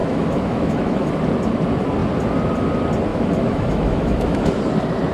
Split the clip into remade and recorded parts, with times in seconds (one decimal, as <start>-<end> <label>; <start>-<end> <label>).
0.0-1.1 remade; 1.1-3.1 recorded; 3.1-4.5 remade; 4.5-5.1 recorded